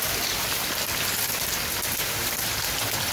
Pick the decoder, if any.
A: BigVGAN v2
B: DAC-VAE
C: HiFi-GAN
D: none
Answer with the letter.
D